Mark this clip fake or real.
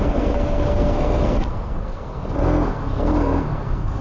fake